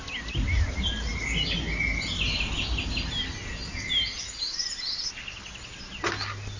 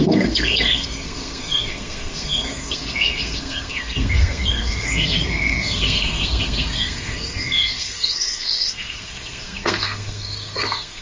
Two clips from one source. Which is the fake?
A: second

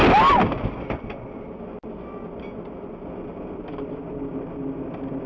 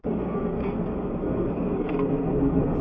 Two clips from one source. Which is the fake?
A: second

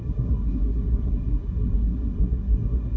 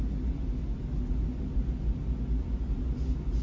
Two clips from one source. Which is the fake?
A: first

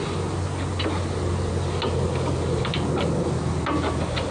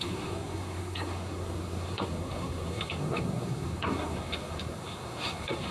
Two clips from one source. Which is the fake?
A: second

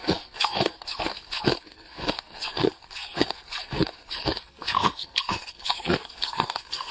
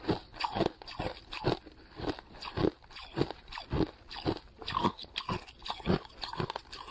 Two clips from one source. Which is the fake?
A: first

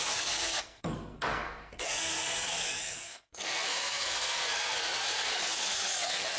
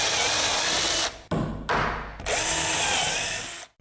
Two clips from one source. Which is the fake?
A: first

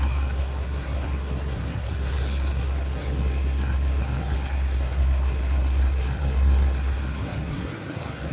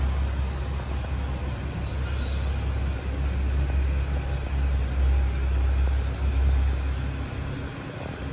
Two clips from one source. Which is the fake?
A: first